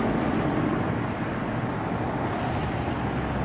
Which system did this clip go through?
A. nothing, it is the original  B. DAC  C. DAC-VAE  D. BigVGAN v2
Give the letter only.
A